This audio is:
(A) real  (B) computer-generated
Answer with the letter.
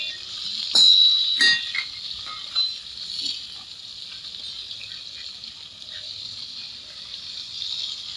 A